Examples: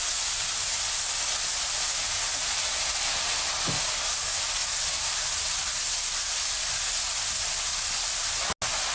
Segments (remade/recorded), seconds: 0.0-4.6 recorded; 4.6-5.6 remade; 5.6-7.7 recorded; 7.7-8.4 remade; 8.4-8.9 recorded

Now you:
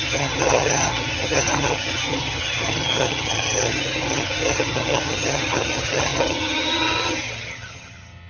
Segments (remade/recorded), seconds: 0.0-8.3 remade

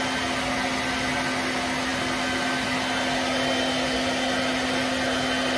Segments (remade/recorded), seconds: 0.0-5.6 recorded

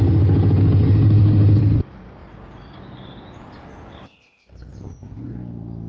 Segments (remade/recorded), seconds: 0.0-5.9 recorded

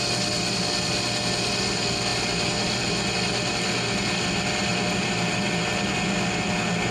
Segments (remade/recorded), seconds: 0.0-6.9 recorded

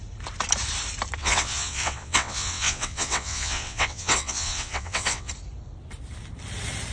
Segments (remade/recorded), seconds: 0.0-1.2 recorded; 1.2-5.3 remade; 5.3-6.9 recorded

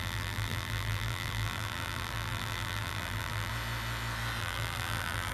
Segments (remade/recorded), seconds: 0.0-3.5 remade; 3.5-4.4 recorded; 4.4-5.3 remade

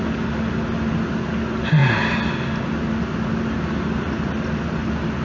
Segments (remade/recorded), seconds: 0.0-5.2 recorded